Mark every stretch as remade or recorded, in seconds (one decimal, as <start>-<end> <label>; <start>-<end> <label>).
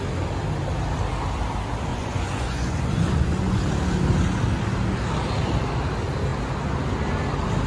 0.0-1.9 recorded; 1.9-3.6 remade; 3.6-7.7 recorded